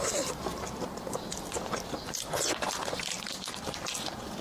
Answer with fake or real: fake